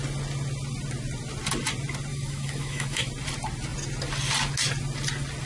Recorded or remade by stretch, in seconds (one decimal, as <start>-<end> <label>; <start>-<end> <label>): 0.0-2.1 recorded; 2.1-3.1 remade; 3.1-5.5 recorded